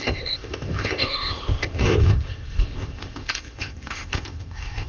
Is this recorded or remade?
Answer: remade